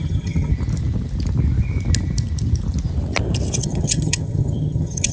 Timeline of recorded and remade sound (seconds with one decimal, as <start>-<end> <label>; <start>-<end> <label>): 0.0-0.5 remade; 0.5-3.6 recorded; 3.6-5.1 remade